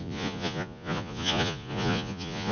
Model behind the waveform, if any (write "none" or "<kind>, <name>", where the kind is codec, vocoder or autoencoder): vocoder, Vocos